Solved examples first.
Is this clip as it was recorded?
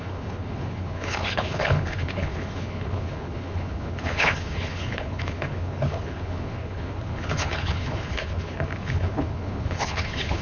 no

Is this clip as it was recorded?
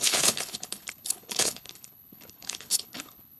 no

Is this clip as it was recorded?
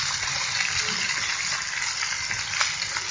yes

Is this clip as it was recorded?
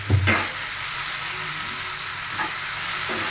yes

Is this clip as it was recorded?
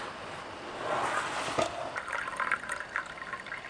yes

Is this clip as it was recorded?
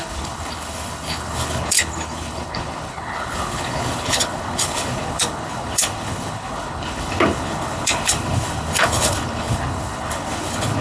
no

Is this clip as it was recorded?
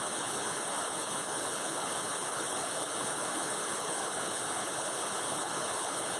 no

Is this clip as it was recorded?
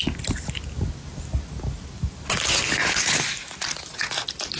yes